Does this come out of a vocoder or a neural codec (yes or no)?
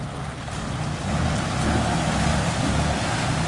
no